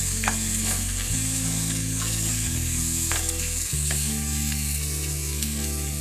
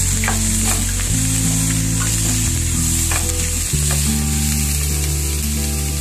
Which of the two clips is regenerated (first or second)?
first